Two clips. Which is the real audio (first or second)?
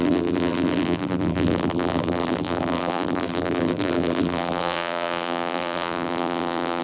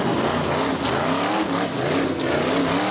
second